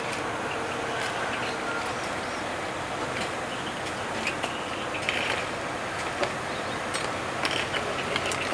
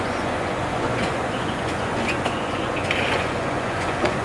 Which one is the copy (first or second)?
second